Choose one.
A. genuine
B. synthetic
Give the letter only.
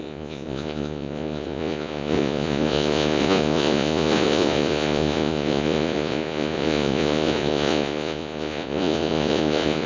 B